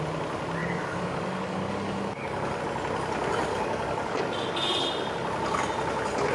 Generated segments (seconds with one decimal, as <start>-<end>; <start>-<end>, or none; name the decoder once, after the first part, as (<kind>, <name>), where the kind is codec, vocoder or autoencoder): 0.6-2.6 (codec, DAC); 3.5-4.2